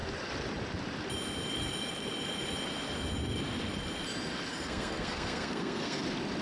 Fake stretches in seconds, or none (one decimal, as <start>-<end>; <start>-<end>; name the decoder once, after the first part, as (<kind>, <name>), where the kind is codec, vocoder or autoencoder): 4.5-6.0 (codec, SNAC)